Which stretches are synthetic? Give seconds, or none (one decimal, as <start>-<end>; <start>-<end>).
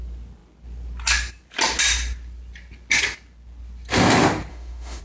4.5-5.0